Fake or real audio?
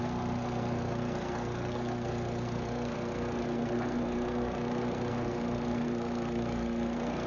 fake